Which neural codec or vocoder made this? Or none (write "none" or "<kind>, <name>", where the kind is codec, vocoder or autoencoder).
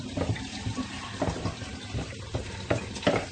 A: none